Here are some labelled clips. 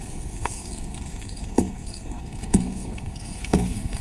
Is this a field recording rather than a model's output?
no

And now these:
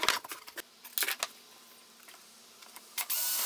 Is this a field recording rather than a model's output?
yes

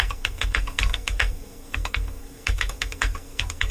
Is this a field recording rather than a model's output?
no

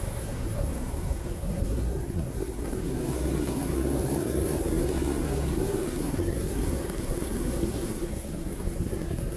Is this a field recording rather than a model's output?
no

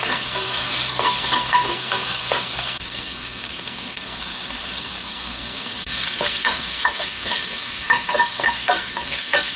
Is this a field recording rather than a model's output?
no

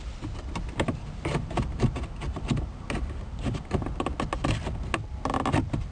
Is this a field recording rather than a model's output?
yes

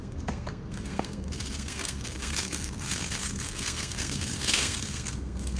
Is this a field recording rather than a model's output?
no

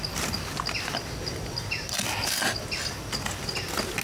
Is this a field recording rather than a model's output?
yes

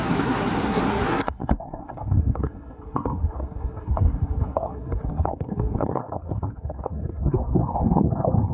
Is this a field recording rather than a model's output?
no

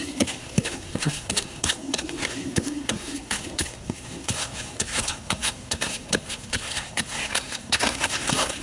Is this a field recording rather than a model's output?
no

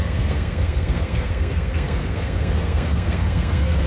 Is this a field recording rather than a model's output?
no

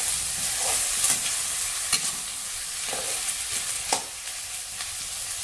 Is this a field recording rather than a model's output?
yes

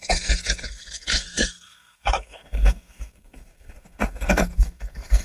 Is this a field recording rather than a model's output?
no